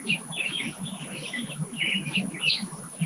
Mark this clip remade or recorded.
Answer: remade